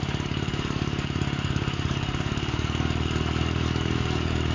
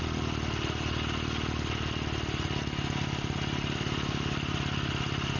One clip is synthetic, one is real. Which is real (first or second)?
second